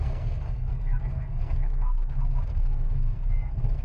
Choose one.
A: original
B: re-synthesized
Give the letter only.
B